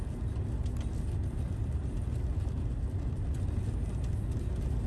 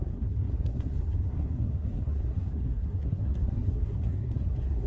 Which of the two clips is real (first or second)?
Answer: first